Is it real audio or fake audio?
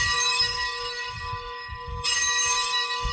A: fake